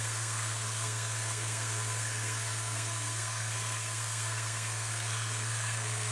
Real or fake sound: fake